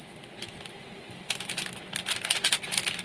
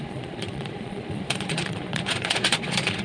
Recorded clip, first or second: first